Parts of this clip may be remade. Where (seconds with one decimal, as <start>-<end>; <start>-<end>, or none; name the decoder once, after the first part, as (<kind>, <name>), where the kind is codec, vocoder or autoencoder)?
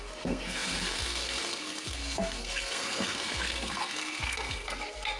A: 0.0-5.2 (codec, SNAC)